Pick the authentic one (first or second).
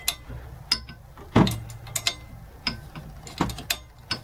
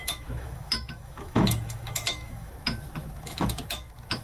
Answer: first